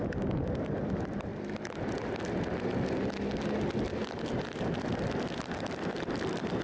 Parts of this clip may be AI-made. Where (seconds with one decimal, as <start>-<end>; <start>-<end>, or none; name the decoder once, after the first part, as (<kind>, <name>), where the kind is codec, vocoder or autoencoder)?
0.0-1.3 (vocoder, BigVGAN v2); 5.3-6.6